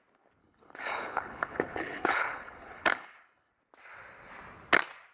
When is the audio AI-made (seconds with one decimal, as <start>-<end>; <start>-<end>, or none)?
0.4-3.5